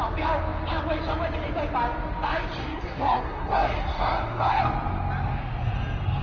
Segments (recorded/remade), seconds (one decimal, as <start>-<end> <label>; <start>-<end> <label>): 0.0-2.6 recorded; 2.6-4.6 remade; 4.6-6.2 recorded